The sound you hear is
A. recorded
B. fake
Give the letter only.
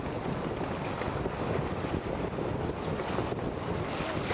A